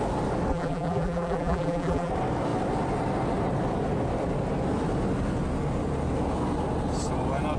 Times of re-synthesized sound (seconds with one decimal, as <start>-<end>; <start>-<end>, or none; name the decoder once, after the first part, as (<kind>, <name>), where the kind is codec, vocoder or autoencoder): 0.5-2.1 (vocoder, BigVGAN v2)